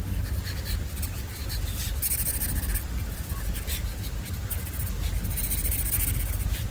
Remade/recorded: recorded